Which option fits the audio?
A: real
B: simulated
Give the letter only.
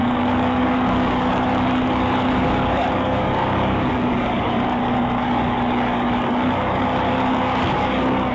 B